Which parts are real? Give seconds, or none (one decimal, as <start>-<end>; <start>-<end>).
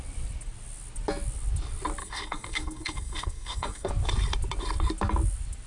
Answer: 0.0-2.0; 3.9-5.7